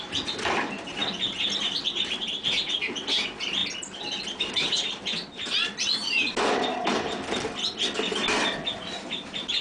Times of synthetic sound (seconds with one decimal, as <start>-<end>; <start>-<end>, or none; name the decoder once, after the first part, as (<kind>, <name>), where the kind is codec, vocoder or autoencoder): 0.0-1.0 (vocoder, BigVGAN v2); 1.6-3.6; 4.4-5.6; 8.7-9.6